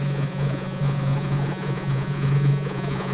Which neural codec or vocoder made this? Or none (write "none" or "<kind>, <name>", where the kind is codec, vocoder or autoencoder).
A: vocoder, Vocos